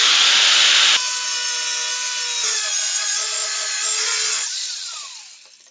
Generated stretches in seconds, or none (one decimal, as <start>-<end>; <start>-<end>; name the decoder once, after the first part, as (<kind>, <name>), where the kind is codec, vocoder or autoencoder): 2.4-5.2 (vocoder, Vocos)